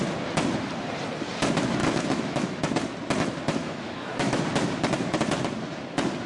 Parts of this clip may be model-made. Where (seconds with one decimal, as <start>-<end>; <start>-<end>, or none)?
1.8-2.6; 3.6-4.4